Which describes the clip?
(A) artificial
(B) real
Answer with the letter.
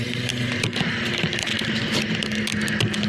B